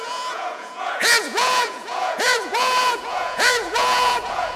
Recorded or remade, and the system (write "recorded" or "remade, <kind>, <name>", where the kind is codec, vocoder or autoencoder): remade, vocoder, Vocos